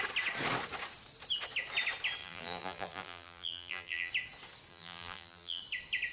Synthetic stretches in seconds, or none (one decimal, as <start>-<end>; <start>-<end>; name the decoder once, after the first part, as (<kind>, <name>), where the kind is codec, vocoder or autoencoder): 2.2-4.1 (vocoder, BigVGAN v2); 4.7-5.6